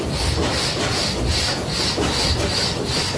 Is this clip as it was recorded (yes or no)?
yes